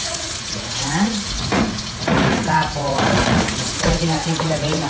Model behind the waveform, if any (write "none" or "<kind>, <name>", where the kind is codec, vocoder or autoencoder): vocoder, Vocos